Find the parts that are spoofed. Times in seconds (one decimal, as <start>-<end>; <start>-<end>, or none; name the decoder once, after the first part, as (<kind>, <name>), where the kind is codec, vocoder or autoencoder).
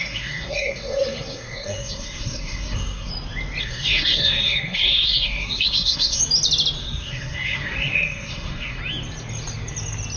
0.0-3.1 (codec, SNAC); 3.6-6.2; 6.8-8.8